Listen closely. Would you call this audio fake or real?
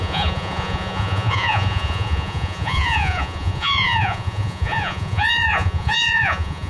fake